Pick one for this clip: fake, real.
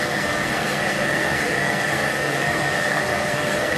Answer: fake